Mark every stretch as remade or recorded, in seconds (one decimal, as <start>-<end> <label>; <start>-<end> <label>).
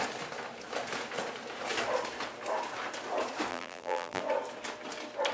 0.0-3.5 recorded; 3.5-4.2 remade; 4.2-5.3 recorded